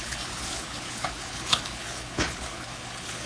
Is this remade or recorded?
remade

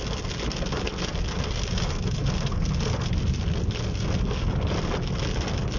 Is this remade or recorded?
recorded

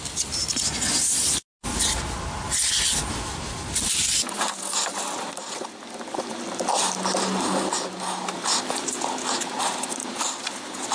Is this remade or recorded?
recorded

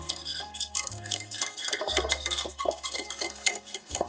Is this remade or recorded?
remade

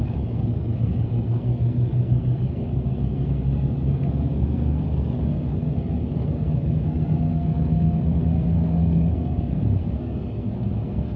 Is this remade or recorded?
remade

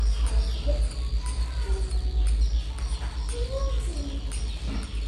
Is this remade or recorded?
recorded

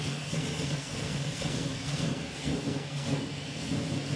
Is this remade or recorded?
remade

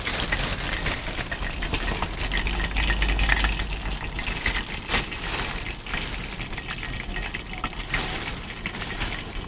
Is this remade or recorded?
recorded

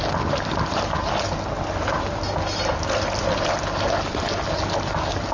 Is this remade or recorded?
recorded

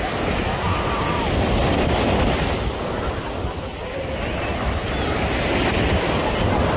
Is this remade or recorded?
recorded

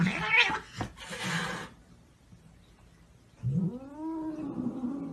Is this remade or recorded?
recorded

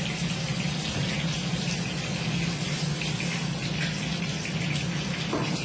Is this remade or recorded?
recorded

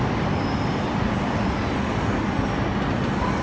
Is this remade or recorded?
recorded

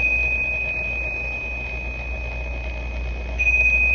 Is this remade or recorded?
recorded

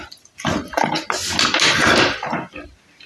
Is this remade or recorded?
recorded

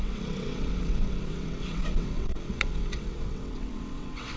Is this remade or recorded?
remade